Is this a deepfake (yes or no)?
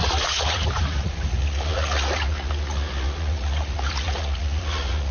yes